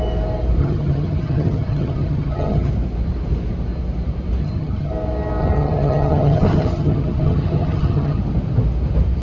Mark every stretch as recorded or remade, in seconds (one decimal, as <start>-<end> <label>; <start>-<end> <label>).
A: 0.0-0.6 recorded; 0.6-2.7 remade; 2.7-4.4 recorded; 4.4-4.9 remade; 4.9-5.4 recorded; 5.4-8.2 remade; 8.2-9.2 recorded